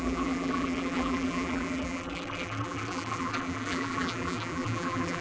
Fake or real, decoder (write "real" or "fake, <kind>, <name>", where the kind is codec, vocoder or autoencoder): fake, vocoder, BigVGAN v2